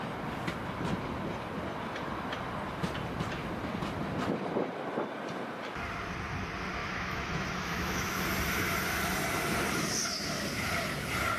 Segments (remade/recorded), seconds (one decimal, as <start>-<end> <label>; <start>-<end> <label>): 0.0-6.8 recorded; 6.8-8.2 remade; 8.2-11.4 recorded